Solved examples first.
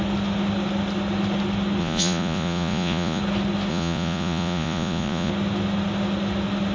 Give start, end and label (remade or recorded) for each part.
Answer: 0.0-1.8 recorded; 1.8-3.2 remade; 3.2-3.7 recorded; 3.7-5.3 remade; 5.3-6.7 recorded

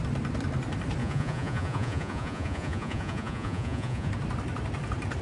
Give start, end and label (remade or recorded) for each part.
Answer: 0.0-1.0 recorded; 1.0-4.1 remade; 4.1-5.2 recorded